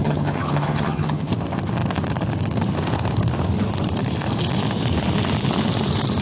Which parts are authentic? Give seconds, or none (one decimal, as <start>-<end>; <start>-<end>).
1.3-6.2